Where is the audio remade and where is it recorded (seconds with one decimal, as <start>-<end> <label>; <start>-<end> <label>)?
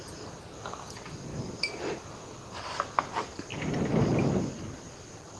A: 0.0-5.4 recorded